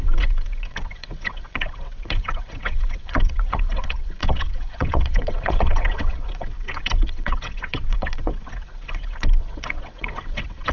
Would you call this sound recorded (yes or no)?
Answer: no